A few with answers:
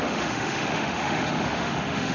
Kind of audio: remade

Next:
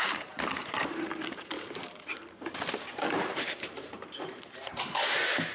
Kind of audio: remade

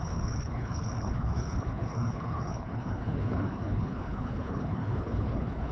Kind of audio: remade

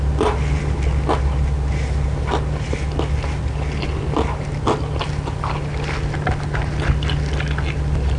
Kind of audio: recorded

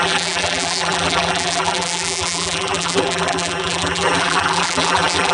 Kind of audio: remade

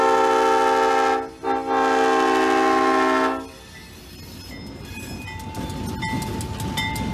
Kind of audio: recorded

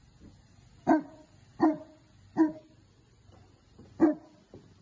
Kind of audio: recorded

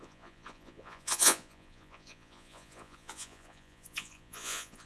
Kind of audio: remade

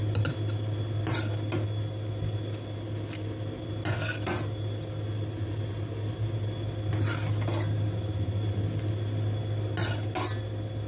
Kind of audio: recorded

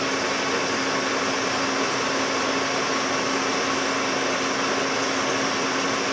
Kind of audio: recorded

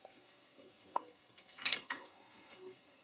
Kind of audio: remade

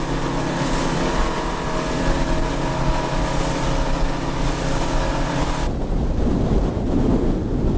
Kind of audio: recorded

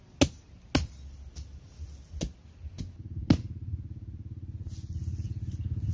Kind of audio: recorded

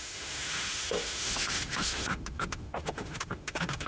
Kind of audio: remade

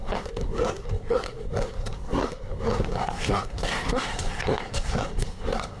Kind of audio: remade